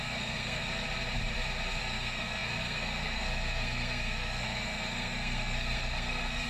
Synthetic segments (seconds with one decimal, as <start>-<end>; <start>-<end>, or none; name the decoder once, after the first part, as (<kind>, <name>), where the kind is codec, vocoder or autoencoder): 0.0-0.6 (codec, SNAC); 1.8-6.5

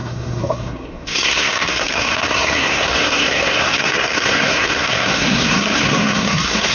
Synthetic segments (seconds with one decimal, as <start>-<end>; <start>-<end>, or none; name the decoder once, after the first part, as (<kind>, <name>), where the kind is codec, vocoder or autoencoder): 0.0-6.7 (codec, SNAC)

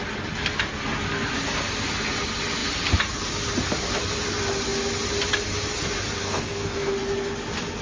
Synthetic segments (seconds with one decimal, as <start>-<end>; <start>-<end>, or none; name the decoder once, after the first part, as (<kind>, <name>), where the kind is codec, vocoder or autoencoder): 6.2-6.9 (codec, SNAC)

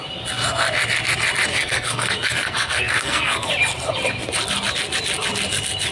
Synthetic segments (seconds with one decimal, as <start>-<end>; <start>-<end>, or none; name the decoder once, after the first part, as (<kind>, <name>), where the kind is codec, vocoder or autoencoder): 1.5-3.5 (codec, SNAC)

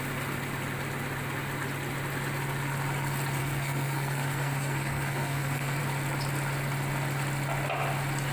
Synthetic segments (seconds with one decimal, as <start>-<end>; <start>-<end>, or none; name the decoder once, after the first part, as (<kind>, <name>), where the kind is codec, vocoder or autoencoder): 3.4-5.8 (codec, SNAC)

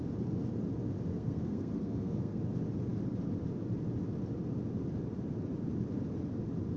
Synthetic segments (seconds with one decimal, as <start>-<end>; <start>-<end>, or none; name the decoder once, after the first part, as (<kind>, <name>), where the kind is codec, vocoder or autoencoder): 1.1-2.4 (codec, SNAC)